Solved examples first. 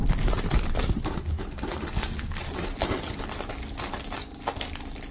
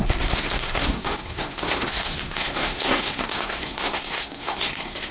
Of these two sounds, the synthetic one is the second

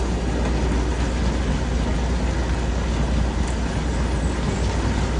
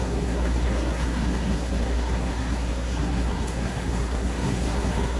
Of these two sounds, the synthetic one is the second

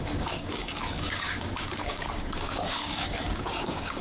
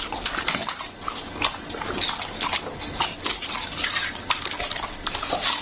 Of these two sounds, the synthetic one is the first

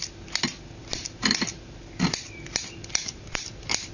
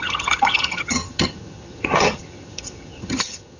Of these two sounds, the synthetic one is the second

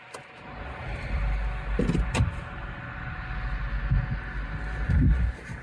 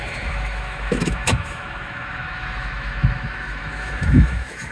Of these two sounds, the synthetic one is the second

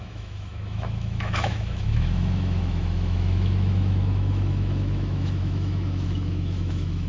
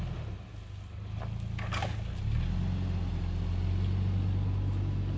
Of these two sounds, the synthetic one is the first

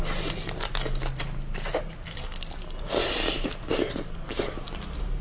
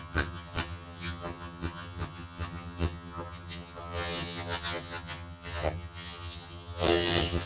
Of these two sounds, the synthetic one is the second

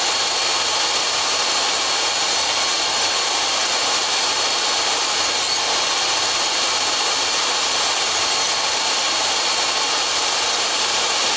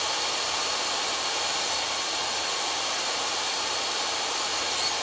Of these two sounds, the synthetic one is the second